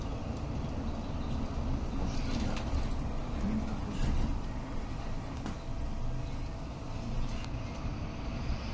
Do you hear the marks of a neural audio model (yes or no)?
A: no